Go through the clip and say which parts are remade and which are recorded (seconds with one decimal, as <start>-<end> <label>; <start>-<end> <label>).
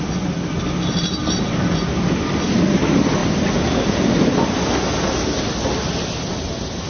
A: 0.0-1.2 recorded; 1.2-1.9 remade; 1.9-6.3 recorded; 6.3-6.9 remade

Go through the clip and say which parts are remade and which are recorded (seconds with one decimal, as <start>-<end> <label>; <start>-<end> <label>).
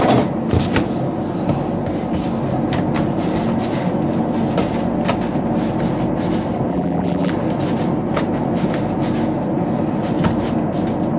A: 0.0-6.7 recorded; 6.7-7.3 remade; 7.3-11.2 recorded